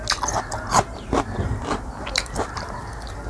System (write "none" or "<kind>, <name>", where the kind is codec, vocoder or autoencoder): none